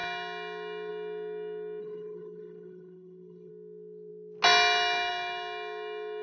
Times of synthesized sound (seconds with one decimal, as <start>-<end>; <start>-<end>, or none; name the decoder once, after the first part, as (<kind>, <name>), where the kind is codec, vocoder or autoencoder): 1.8-3.5 (codec, HILCodec)